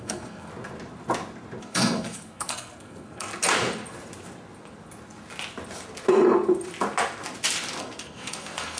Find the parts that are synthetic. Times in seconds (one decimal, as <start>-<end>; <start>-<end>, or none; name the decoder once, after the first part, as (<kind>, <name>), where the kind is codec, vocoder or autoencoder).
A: 0.0-0.5 (codec, SNAC); 1.6-3.3; 7.8-8.8